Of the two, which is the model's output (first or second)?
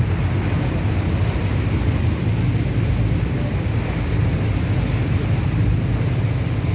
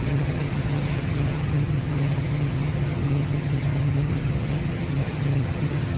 second